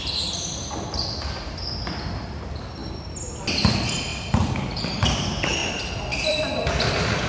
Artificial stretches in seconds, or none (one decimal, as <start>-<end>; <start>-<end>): 4.1-4.9; 5.6-6.5